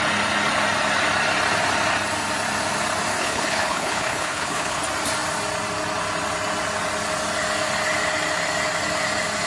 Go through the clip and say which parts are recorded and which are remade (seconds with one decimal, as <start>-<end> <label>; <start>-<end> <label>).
0.0-3.2 recorded; 3.2-4.8 remade; 4.8-9.5 recorded